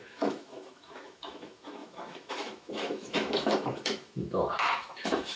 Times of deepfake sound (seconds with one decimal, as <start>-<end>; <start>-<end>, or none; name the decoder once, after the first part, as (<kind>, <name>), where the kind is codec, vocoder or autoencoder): 0.0-5.4 (autoencoder, DAC-VAE)